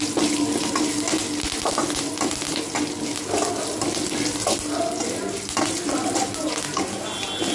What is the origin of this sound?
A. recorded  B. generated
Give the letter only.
A